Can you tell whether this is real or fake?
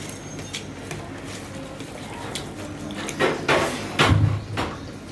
real